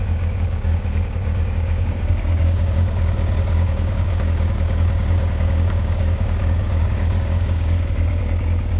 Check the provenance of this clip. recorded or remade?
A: remade